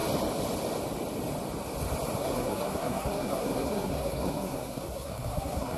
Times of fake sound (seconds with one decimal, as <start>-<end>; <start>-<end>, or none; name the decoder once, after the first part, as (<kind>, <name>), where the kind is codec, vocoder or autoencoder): 2.2-5.8 (codec, SNAC)